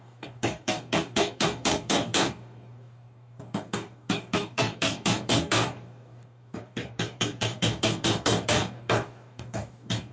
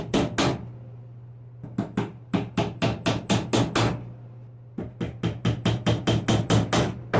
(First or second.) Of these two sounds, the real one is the second